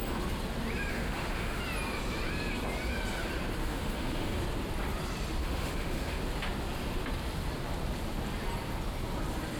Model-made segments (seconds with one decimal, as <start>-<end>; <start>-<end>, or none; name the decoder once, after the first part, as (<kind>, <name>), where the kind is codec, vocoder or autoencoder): 0.9-1.6 (autoencoder, DAC-VAE); 3.6-4.4; 5.4-6.2

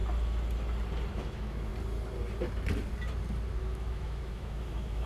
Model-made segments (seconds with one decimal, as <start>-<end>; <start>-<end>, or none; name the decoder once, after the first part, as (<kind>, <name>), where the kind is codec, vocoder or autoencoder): 1.1-1.7 (autoencoder, DAC-VAE); 3.6-5.1

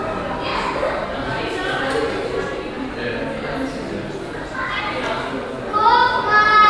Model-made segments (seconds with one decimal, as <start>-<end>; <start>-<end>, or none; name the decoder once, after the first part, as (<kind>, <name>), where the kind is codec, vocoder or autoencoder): none

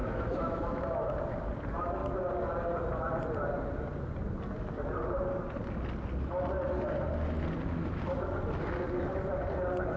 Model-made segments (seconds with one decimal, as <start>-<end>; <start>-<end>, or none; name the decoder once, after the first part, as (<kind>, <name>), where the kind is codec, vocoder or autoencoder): 0.0-1.5 (autoencoder, DAC-VAE)

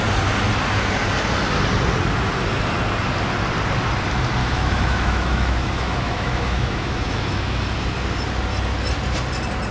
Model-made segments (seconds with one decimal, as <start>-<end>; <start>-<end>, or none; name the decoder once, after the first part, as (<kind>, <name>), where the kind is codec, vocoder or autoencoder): 4.4-7.6 (autoencoder, DAC-VAE)

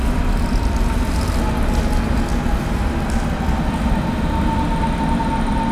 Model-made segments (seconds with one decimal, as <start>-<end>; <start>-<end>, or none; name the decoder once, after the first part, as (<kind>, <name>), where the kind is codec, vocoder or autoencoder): none

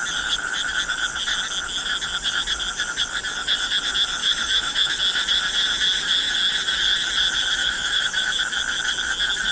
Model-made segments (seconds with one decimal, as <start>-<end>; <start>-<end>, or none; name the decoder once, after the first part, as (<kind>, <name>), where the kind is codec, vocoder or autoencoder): 4.2-4.9 (autoencoder, DAC-VAE); 7.6-8.4